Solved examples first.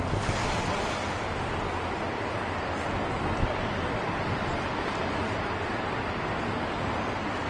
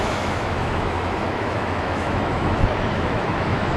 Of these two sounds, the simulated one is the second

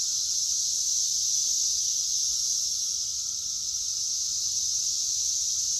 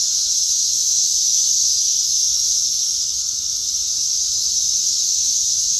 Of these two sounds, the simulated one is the second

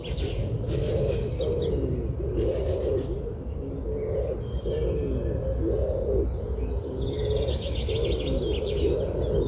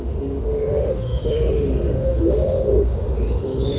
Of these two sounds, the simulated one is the second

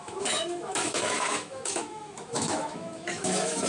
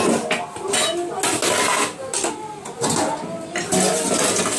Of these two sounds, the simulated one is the first